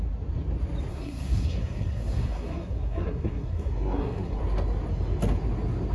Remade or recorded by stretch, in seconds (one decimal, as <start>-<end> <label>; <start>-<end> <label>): 0.0-0.9 recorded; 0.9-4.4 remade; 4.4-5.9 recorded